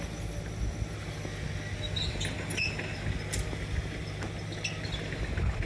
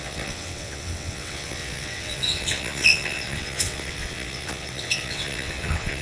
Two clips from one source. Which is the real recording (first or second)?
first